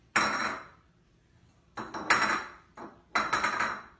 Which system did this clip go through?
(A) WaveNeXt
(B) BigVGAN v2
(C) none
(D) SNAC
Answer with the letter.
C